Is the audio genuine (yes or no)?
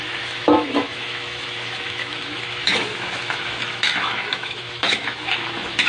no